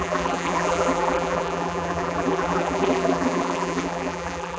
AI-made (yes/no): yes